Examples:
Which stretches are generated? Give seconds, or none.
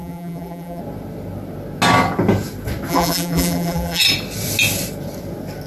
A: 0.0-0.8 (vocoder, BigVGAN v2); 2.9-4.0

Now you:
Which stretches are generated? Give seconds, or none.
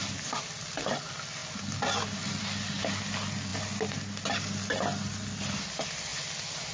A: none